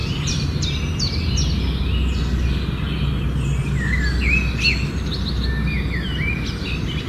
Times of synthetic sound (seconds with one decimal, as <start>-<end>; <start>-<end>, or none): none